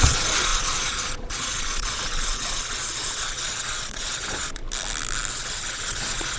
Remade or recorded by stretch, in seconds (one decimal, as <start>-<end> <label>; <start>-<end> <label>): 0.0-4.6 remade; 4.6-5.3 recorded; 5.3-6.4 remade